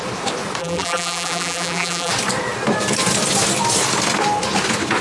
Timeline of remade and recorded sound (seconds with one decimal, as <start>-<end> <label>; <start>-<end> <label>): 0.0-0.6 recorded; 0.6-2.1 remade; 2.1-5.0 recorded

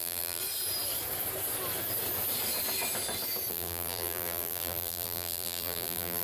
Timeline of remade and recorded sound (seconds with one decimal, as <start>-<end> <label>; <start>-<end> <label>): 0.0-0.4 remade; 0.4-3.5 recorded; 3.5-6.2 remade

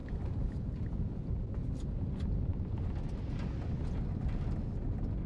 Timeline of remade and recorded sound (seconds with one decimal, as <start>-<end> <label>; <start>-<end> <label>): 0.0-5.3 recorded

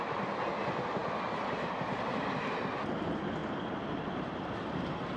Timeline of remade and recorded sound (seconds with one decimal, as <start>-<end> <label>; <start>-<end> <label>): 0.0-3.4 recorded; 3.4-4.2 remade; 4.2-5.2 recorded